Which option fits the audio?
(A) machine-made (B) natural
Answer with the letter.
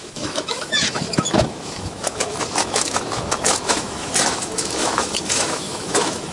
A